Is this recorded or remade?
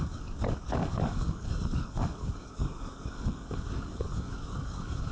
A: remade